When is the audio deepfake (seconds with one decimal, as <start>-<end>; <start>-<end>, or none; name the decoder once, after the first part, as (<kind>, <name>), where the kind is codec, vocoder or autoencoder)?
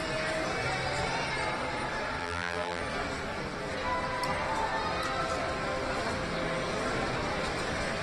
2.2-2.8 (vocoder, BigVGAN v2)